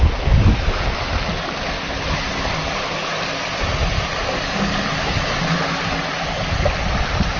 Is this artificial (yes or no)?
no